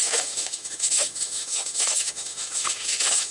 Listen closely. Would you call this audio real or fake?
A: fake